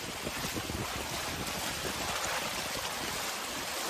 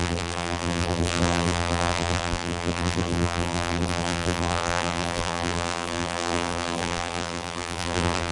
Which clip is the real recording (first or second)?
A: first